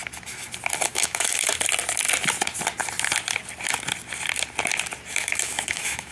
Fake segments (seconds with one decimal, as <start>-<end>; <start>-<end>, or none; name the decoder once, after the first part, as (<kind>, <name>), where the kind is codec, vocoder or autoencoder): 0.9-1.5 (autoencoder, DAC-VAE); 5.1-6.1